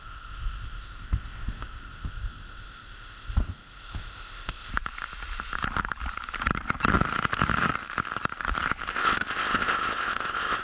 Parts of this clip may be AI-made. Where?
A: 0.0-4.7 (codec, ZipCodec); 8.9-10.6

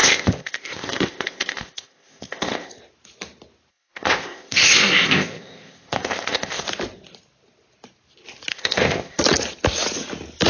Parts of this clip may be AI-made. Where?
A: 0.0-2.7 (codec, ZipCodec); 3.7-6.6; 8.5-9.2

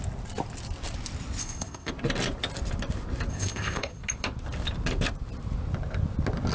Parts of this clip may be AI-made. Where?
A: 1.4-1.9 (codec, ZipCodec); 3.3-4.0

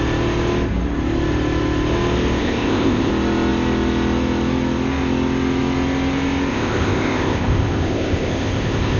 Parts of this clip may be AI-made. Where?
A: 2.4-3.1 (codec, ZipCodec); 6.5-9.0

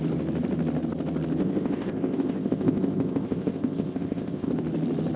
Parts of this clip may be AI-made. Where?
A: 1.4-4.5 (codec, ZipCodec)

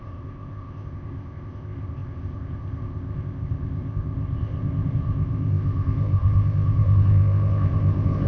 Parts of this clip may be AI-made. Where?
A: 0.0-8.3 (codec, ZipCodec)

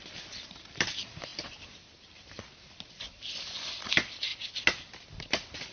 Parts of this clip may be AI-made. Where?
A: none

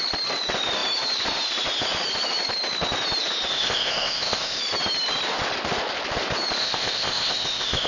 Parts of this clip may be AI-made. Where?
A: 3.5-4.6 (codec, ZipCodec); 6.6-7.9